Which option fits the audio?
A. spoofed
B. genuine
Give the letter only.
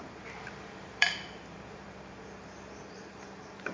A